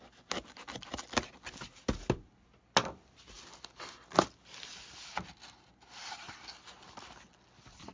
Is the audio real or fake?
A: real